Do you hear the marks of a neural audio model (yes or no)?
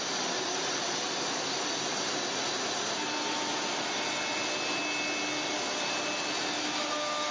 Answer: no